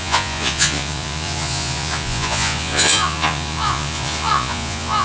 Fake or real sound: fake